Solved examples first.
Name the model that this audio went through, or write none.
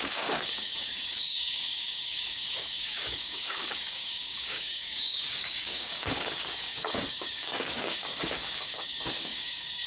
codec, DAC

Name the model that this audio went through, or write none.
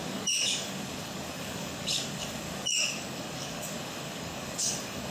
codec, DAC